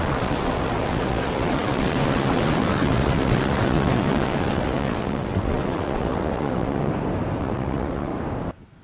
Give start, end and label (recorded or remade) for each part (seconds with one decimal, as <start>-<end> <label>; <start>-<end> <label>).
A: 0.0-6.9 remade; 6.9-7.4 recorded; 7.4-8.1 remade; 8.1-8.8 recorded